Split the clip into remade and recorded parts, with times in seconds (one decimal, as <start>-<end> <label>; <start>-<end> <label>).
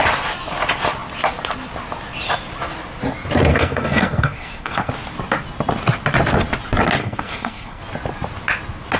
0.0-3.5 recorded; 3.5-4.9 remade; 4.9-7.0 recorded; 7.0-7.8 remade; 7.8-9.0 recorded